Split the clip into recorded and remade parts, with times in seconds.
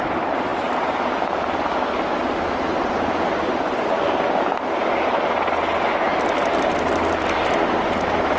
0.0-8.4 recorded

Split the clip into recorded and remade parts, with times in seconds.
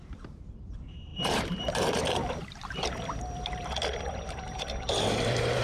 0.0-5.6 remade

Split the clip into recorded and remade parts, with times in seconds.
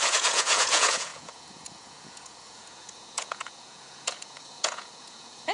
0.0-5.5 remade